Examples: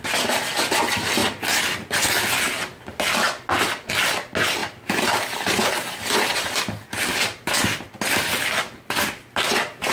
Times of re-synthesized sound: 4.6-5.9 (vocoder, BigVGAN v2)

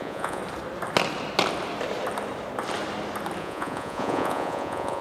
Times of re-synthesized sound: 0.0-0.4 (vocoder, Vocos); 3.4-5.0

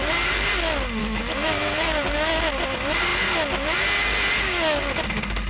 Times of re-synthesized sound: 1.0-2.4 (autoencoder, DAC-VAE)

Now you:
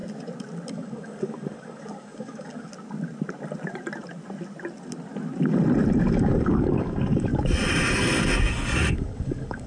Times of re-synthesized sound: 0.7-2.7 (codec, DAC); 6.1-7.3; 8.9-9.7

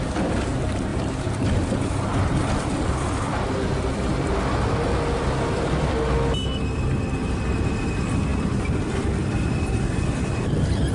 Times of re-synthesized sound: 0.9-4.4 (vocoder, BigVGAN v2); 8.3-10.3

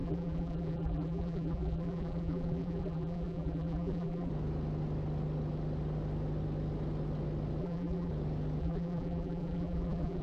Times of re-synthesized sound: 0.0-4.3 (vocoder, BigVGAN v2); 7.6-8.1; 8.6-10.2

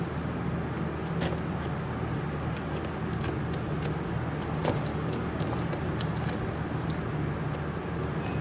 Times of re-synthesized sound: 4.9-5.4 (codec, DAC)